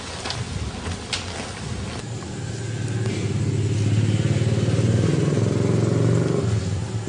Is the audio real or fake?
real